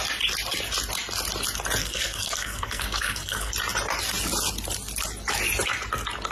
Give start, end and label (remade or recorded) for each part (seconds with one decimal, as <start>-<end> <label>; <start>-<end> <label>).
0.0-1.8 recorded; 1.8-3.5 remade; 3.5-6.3 recorded